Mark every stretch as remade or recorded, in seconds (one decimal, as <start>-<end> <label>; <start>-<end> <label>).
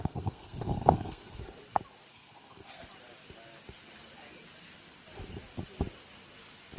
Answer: 0.0-1.4 remade; 1.4-2.1 recorded; 2.1-2.8 remade; 2.8-6.8 recorded